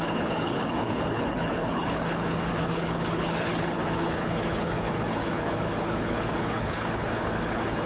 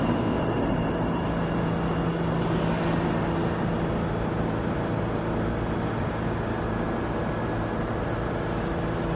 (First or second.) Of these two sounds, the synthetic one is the first